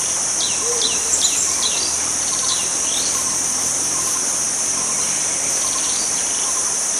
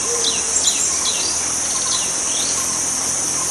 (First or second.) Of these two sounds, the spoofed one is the first